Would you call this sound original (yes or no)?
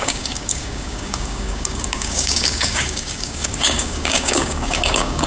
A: no